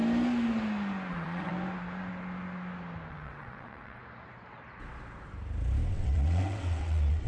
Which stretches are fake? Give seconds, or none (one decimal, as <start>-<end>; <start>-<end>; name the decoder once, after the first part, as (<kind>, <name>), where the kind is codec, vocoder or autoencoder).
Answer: 1.1-1.5 (vocoder, WaveNeXt); 3.1-4.0; 5.9-7.3